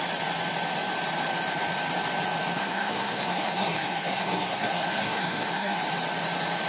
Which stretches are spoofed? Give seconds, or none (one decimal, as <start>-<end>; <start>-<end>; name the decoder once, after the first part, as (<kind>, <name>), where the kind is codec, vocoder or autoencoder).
2.6-5.8 (codec, SNAC)